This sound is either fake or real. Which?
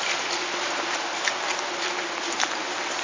real